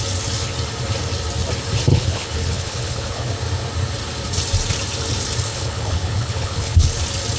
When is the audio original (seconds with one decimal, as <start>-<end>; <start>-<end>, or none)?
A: 0.0-1.9; 3.3-5.5; 7.0-7.4